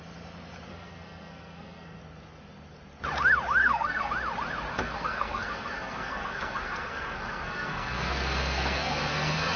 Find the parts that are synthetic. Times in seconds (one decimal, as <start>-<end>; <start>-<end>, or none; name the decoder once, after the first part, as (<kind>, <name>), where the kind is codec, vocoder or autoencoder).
0.7-2.0 (codec, SNAC); 3.6-4.1; 4.7-9.6